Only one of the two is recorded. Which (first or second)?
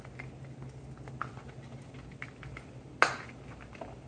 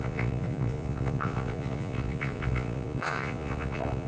first